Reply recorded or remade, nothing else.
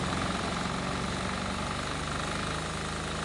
recorded